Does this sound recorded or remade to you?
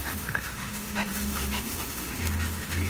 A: remade